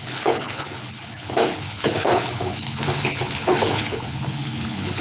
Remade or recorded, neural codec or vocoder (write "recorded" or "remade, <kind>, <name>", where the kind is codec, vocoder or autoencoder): remade, codec, HILCodec